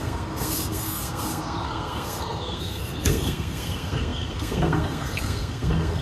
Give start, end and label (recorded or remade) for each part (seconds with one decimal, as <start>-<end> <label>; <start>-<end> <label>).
0.0-6.0 remade